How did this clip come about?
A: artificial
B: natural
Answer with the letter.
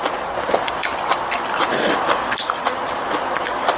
B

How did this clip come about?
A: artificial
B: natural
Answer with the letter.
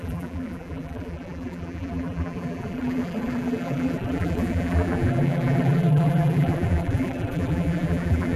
A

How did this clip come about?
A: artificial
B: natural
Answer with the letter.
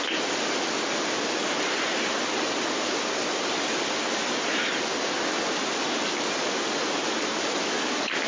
B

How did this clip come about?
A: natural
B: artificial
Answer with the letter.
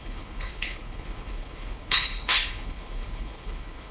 B